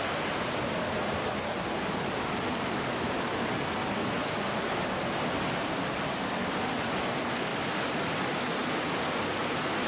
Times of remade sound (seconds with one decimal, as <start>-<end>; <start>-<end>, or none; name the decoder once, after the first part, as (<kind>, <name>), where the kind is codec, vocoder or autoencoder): none